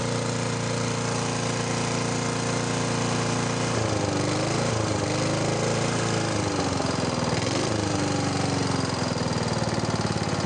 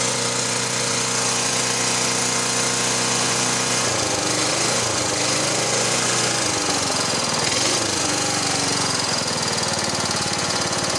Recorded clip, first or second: first